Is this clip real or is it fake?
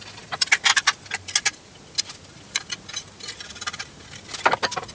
real